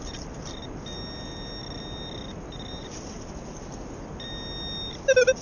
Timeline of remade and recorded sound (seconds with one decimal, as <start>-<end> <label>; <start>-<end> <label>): 0.0-5.4 recorded